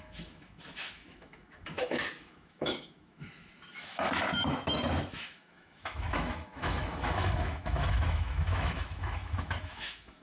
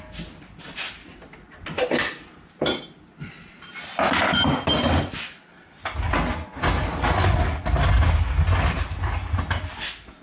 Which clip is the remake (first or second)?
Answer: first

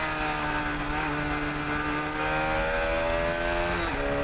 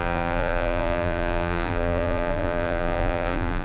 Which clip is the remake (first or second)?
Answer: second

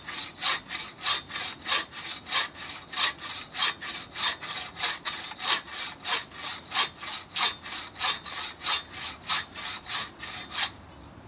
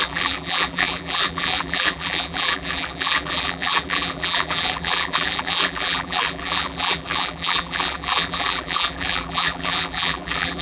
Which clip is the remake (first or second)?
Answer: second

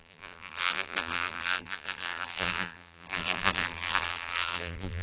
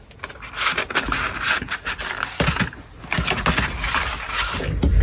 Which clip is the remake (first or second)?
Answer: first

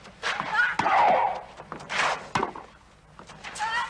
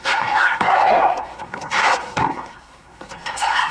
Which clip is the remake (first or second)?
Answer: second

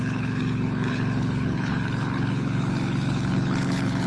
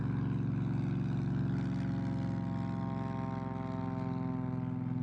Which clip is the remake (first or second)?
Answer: first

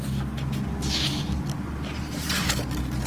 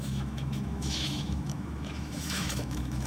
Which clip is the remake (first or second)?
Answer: second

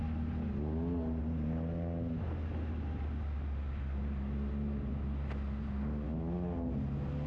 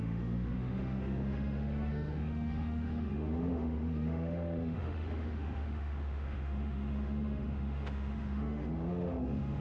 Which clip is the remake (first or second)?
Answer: second